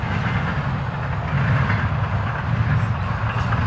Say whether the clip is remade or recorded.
recorded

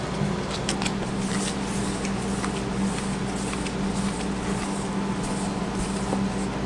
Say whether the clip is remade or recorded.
recorded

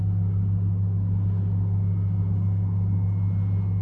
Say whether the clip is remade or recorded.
recorded